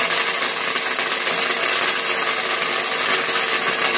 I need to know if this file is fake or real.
real